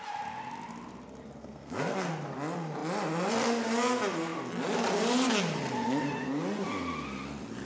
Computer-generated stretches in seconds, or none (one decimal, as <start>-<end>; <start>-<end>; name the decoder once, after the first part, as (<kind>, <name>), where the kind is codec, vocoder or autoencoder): 1.4-2.1 (codec, SNAC)